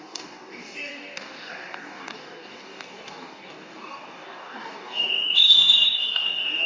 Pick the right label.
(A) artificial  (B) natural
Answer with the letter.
A